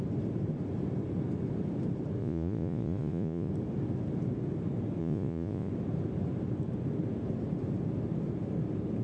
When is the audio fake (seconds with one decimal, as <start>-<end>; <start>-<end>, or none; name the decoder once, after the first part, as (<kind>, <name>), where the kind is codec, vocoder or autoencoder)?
2.2-3.5 (vocoder, Vocos); 5.0-5.7

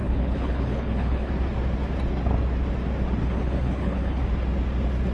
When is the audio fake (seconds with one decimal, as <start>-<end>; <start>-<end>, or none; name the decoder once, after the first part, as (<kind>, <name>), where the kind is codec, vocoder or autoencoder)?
0.0-1.3 (codec, HILCodec); 3.2-4.2

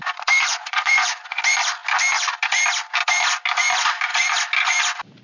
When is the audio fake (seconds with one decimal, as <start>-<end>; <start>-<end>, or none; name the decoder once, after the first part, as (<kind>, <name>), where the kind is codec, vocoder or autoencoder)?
0.5-1.4 (vocoder, Vocos)